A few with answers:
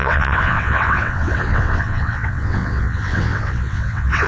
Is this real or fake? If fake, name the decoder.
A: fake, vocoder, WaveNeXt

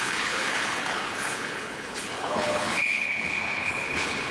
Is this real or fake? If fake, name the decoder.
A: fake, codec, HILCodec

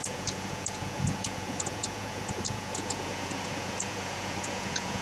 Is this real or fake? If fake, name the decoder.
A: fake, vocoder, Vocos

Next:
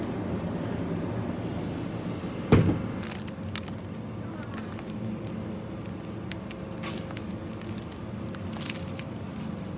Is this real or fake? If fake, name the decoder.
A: real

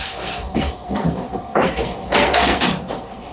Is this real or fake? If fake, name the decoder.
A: fake, codec, SNAC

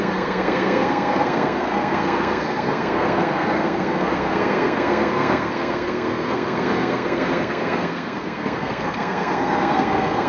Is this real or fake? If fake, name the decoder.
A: fake, codec, SNAC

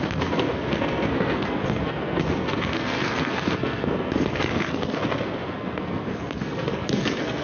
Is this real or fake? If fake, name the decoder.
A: fake, codec, SNAC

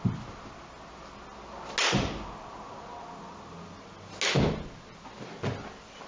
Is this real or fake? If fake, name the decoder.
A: real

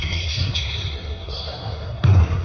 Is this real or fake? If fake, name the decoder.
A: fake, codec, SNAC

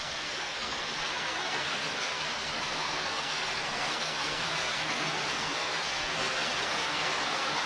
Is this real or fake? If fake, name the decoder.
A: fake, codec, SNAC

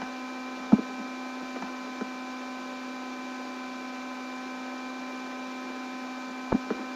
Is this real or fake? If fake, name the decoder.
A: real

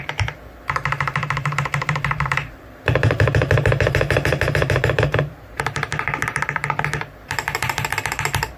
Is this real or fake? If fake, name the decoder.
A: fake, vocoder, BigVGAN v2